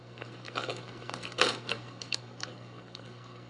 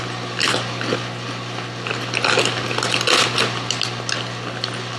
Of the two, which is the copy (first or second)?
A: first